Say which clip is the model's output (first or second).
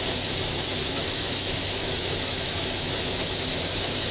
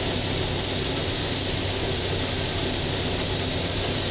first